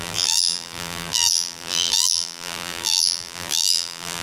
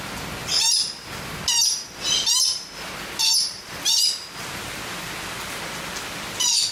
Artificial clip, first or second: first